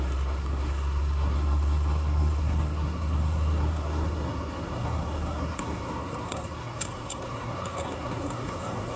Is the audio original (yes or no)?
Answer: no